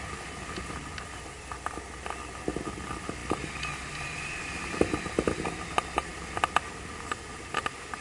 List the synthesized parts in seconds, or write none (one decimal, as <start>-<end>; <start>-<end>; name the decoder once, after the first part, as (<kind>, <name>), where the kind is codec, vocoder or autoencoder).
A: 3.2-4.0 (vocoder, BigVGAN v2)